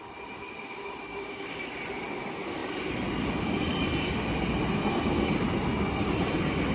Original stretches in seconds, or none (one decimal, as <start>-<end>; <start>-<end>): 0.0-1.0; 1.7-6.7